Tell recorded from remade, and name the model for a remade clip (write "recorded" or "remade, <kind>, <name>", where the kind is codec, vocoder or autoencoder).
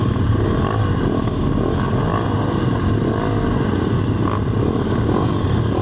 recorded